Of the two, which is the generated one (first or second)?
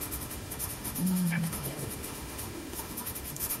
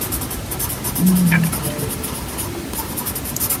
first